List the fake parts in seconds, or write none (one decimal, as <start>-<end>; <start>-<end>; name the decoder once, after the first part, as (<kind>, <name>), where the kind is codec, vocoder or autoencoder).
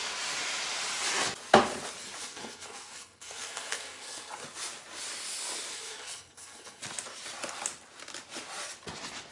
2.2-4.3 (codec, SNAC); 5.7-6.8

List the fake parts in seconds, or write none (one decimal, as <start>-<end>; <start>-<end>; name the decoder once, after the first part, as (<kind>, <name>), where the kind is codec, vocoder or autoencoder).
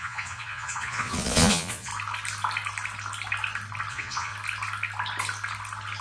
0.0-1.9 (vocoder, Vocos); 3.9-4.3